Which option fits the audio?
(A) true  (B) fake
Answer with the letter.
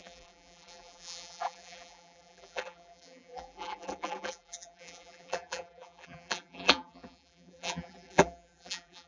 B